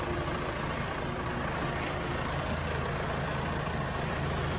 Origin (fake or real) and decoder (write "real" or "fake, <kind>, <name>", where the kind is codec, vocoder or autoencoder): fake, vocoder, BigVGAN v2